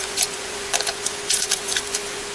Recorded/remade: remade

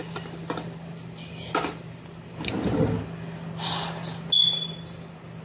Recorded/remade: recorded